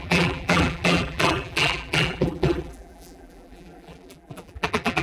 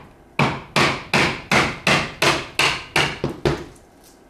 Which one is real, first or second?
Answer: second